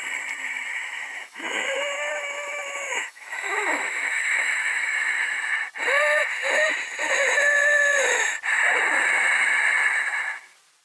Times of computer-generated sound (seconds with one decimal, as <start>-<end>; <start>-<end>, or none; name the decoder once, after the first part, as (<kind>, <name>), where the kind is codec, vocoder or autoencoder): 0.7-5.4 (autoencoder, DAC-VAE)